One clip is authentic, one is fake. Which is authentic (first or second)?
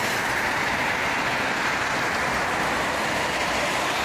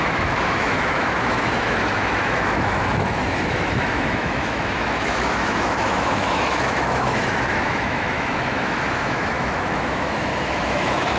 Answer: first